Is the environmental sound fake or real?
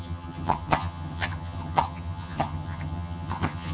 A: fake